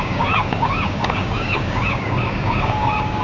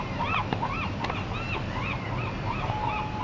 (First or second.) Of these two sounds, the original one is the second